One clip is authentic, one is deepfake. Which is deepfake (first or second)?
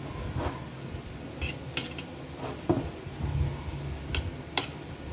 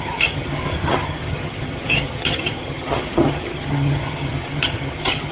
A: second